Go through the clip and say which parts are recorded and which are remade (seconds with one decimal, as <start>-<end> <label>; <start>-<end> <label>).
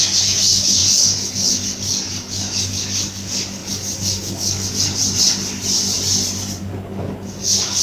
0.0-5.0 remade; 5.0-6.6 recorded; 6.6-7.8 remade